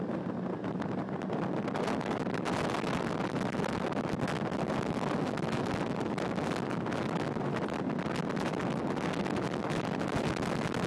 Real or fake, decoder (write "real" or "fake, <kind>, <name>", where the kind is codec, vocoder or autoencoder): real